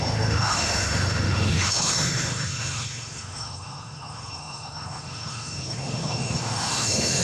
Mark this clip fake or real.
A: fake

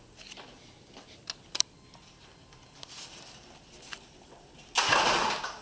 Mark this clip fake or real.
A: real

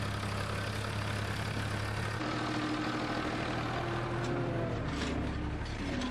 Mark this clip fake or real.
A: real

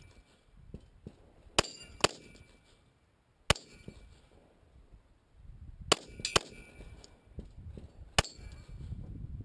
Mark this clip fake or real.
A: real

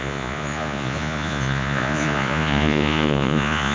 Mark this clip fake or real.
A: fake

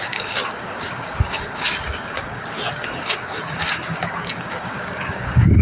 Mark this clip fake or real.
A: fake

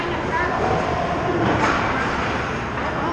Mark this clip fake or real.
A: real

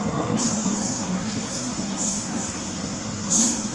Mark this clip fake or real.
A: fake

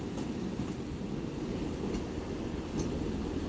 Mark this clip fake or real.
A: real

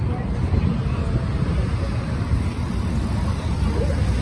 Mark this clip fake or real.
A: real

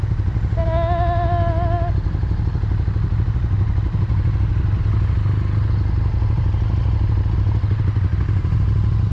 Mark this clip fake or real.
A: real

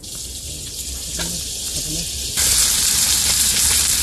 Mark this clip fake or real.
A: real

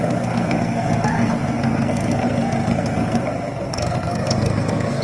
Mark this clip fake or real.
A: fake